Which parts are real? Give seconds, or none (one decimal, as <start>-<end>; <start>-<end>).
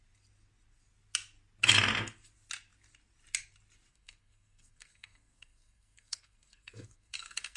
0.0-3.9